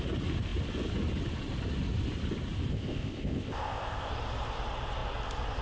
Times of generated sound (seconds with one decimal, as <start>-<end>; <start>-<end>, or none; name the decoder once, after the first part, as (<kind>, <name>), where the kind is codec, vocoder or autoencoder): 2.7-4.1 (codec, ZipCodec)